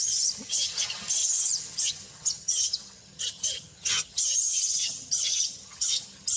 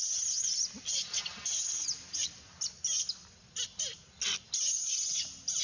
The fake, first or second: first